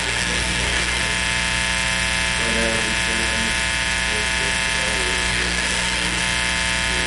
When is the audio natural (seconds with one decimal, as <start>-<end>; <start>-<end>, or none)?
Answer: 1.0-5.3; 6.2-7.1